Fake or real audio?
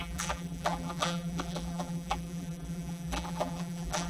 fake